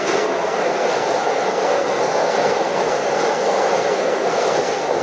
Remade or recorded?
remade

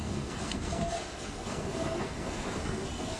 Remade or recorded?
remade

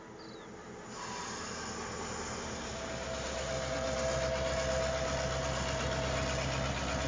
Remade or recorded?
recorded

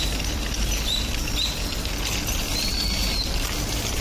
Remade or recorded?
recorded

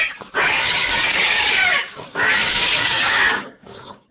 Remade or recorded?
remade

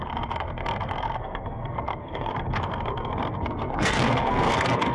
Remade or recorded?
remade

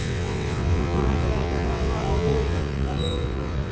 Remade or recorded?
remade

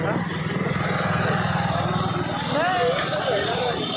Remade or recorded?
recorded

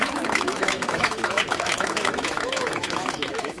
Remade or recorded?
remade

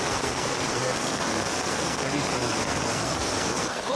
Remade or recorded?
remade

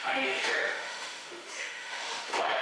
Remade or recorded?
remade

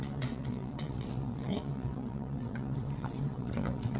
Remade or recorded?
remade